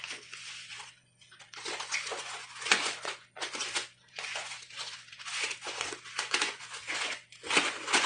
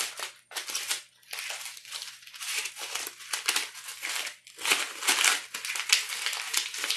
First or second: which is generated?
first